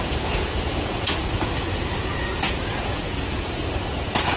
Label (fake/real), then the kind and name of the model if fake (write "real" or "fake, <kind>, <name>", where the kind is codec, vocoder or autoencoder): fake, vocoder, Vocos